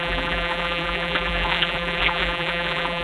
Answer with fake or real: fake